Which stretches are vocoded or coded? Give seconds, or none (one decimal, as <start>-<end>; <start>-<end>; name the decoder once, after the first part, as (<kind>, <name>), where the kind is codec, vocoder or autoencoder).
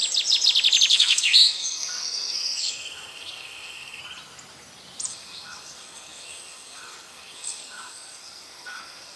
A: 0.9-4.0 (codec, SNAC); 5.1-9.2